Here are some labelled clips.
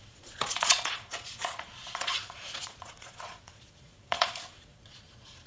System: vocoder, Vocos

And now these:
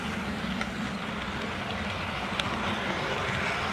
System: none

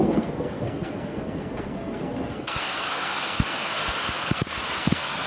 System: codec, SNAC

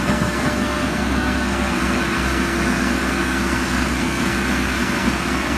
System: codec, SNAC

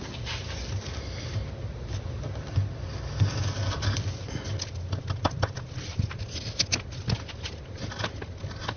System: none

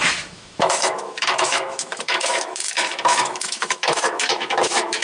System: autoencoder, DAC-VAE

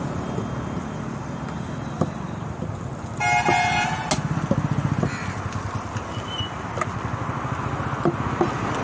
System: none